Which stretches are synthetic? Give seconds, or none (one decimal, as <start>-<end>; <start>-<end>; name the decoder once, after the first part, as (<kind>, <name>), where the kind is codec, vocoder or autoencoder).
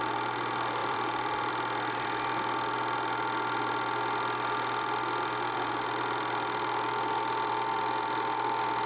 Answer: 0.8-1.5 (vocoder, BigVGAN v2)